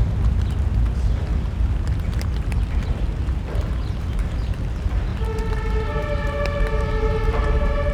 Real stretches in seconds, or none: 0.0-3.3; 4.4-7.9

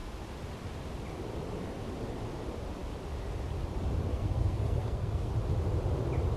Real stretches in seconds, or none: 0.0-4.1; 5.3-6.4

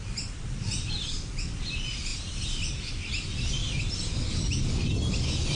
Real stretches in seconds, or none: 0.0-5.5

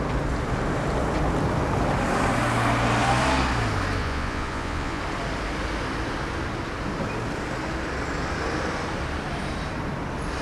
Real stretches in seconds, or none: 0.0-4.0; 5.0-10.4